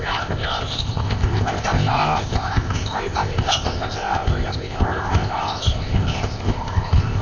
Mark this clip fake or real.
fake